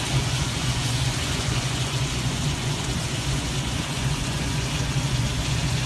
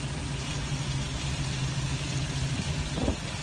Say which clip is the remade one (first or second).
first